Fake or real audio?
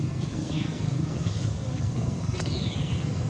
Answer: fake